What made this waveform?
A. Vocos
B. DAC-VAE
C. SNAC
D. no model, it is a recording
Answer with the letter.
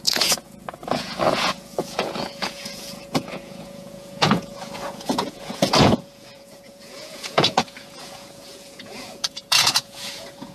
A